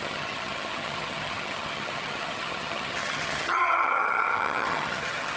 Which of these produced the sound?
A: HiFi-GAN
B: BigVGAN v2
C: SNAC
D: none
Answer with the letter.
A